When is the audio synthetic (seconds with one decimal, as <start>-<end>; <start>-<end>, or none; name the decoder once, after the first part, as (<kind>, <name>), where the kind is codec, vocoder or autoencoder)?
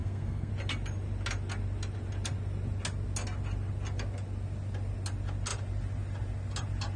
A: 0.0-0.5 (codec, SNAC)